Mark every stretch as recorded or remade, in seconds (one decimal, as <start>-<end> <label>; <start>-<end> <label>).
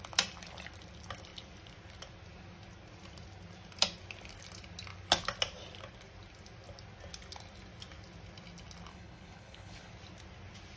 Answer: 0.0-8.9 recorded; 8.9-9.9 remade; 9.9-10.8 recorded